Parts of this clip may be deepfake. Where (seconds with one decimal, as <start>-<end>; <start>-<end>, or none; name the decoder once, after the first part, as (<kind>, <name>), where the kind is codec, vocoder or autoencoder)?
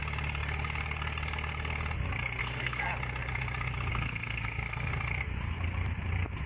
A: 2.4-2.9 (codec, SNAC); 3.9-4.9